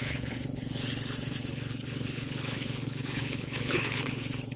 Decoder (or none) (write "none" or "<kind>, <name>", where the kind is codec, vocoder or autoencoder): codec, HILCodec